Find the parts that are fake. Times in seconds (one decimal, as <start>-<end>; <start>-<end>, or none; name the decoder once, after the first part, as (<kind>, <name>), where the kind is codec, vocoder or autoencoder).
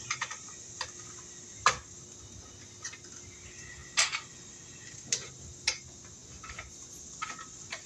none